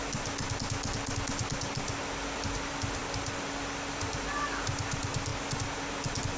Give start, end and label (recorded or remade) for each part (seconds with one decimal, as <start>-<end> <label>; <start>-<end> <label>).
0.0-6.4 recorded